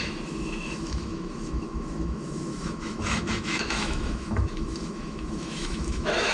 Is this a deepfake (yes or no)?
yes